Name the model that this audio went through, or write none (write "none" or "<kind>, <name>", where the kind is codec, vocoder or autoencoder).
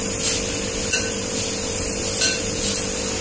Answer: none